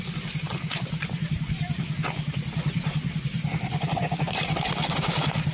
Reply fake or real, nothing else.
real